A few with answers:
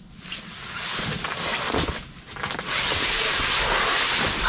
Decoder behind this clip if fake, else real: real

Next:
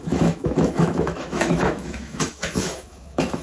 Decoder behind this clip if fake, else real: fake, autoencoder, DAC-VAE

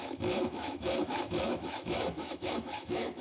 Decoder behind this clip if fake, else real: fake, autoencoder, DAC-VAE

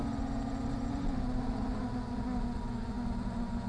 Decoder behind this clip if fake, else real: real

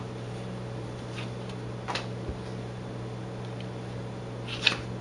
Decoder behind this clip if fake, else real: real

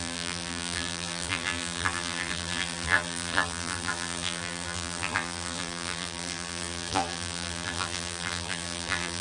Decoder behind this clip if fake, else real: fake, vocoder, BigVGAN v2